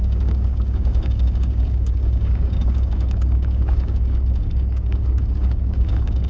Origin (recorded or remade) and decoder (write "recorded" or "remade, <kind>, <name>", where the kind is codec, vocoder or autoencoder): remade, codec, DAC